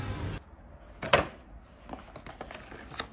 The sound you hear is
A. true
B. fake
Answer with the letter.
A